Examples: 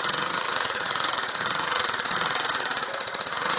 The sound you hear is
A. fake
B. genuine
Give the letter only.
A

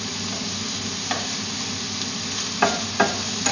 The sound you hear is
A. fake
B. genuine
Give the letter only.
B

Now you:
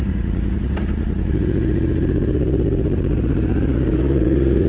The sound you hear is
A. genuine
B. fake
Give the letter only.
B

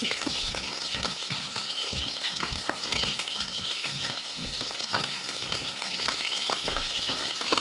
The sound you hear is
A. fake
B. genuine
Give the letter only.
A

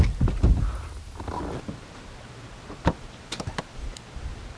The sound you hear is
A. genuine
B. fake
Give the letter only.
A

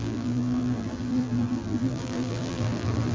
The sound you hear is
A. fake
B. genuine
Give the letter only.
A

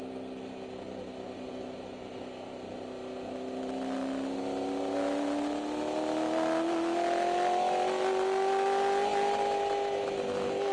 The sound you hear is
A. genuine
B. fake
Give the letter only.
A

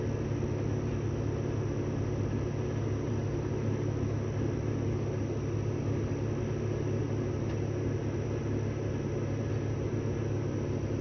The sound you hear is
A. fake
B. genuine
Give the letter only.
B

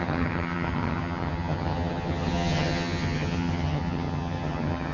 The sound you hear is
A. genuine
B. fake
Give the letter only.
B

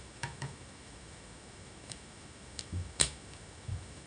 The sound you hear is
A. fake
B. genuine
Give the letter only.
A